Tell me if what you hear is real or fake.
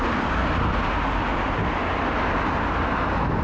real